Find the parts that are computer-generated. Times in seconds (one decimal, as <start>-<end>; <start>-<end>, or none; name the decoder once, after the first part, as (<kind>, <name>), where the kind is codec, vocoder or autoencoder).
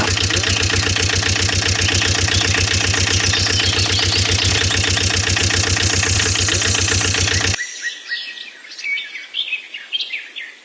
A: none